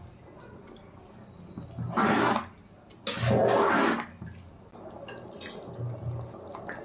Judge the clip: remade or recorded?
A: recorded